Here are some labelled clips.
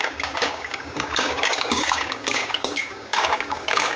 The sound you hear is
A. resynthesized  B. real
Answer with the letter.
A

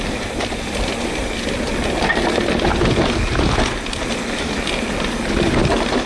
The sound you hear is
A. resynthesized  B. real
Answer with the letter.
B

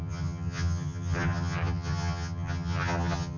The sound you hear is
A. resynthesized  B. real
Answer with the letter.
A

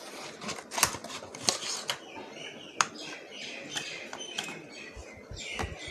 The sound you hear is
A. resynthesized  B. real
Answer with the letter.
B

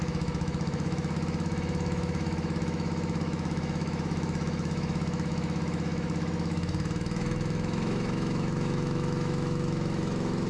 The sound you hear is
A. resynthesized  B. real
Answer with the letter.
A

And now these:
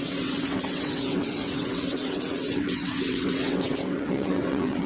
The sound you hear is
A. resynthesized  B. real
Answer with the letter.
A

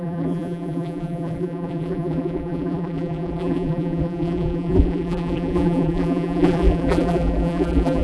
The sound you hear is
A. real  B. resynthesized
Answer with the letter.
B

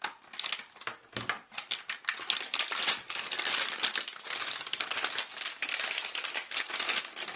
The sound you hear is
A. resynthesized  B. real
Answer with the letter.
B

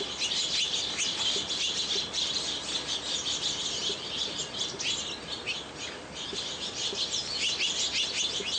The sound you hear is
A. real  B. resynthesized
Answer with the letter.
A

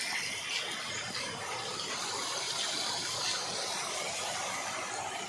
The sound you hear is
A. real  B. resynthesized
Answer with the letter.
A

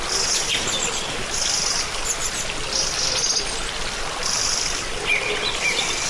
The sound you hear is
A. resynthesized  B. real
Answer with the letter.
B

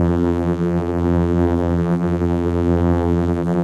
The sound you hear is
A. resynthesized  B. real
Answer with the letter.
A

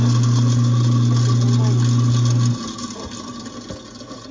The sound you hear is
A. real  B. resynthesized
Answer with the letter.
A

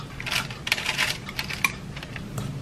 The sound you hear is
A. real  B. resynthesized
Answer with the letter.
A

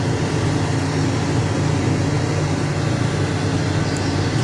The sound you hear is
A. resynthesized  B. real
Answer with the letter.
B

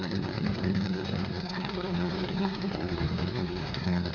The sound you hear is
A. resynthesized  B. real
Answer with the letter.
A